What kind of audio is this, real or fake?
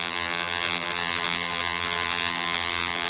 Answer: fake